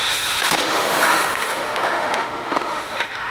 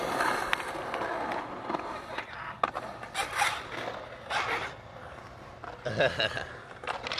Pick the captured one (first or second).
second